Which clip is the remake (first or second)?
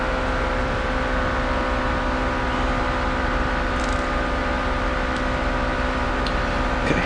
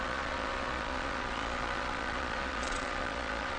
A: second